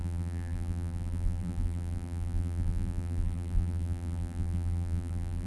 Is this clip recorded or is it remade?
remade